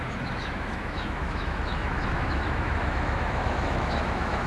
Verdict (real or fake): fake